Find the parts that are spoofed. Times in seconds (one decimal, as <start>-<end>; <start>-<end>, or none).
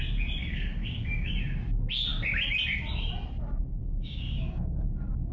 0.4-1.3; 3.8-4.8